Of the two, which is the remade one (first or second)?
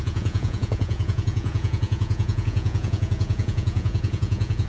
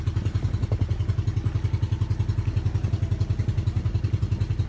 first